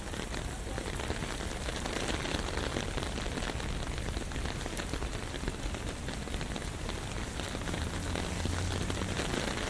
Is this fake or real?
real